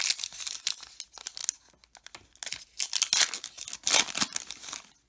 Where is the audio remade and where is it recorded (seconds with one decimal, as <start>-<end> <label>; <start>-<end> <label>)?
0.0-5.1 recorded